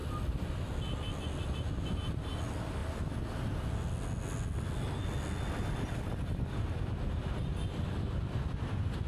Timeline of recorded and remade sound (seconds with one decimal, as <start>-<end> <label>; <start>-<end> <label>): 0.0-9.1 recorded